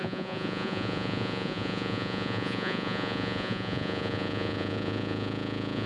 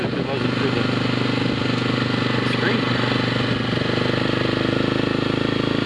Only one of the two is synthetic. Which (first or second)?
first